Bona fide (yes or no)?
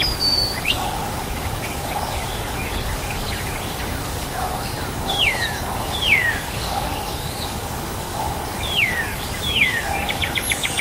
no